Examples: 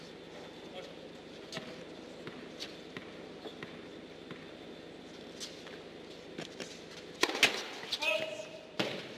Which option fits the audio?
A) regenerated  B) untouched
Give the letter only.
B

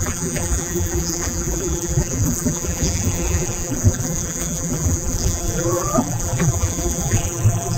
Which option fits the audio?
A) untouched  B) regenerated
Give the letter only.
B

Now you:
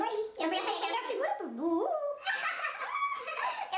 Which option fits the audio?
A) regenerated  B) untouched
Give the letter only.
B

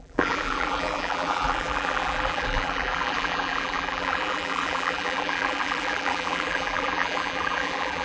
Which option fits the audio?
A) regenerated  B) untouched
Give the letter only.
A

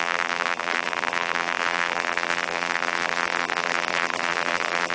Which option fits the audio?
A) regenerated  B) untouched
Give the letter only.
A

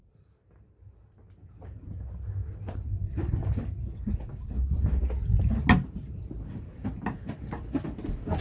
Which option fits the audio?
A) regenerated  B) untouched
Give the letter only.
B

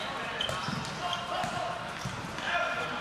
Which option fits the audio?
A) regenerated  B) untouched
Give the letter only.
A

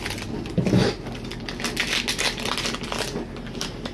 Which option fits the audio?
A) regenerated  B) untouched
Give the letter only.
B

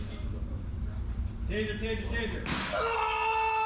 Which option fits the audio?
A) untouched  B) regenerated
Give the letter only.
B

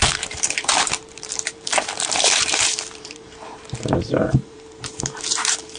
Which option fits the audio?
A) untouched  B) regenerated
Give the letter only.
B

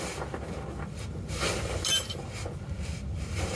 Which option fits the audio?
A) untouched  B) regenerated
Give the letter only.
B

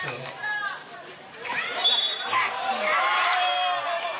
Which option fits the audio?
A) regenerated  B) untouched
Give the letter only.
A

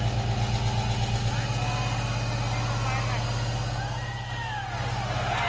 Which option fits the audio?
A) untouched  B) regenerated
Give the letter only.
A